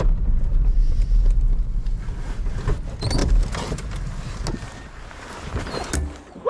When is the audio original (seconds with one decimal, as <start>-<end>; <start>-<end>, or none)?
0.0-6.5